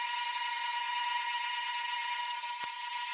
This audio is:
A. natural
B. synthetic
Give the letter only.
B